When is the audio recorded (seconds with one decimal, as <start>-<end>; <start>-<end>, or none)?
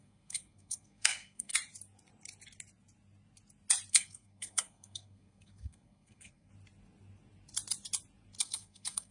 1.5-3.9; 6.5-8.4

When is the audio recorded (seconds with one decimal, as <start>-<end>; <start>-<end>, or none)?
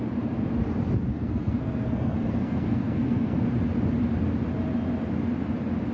0.0-1.1; 3.4-5.9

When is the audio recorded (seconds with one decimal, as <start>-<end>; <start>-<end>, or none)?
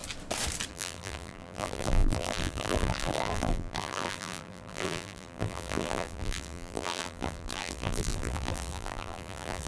0.0-0.7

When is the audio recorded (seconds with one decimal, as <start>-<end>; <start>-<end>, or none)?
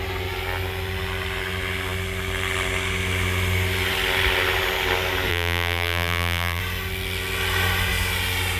0.0-5.3; 6.6-8.6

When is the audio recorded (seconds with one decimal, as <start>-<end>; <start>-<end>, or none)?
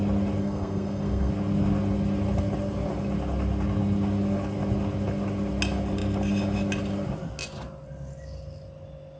0.0-0.4; 1.3-9.2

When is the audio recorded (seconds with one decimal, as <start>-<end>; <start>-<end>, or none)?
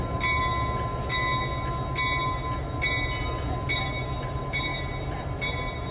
0.0-4.7